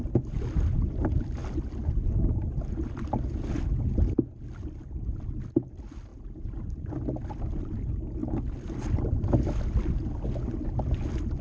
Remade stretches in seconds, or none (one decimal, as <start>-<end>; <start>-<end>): none